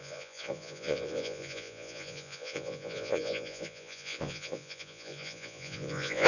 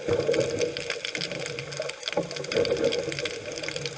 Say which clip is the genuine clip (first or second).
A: second